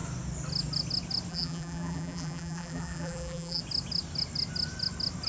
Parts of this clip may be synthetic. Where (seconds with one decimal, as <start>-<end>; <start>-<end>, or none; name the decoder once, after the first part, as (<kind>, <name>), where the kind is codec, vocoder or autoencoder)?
1.3-3.6 (vocoder, BigVGAN v2)